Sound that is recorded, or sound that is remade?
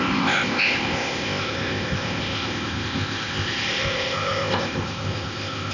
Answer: remade